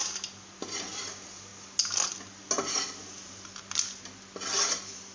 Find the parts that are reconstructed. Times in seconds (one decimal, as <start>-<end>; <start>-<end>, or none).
none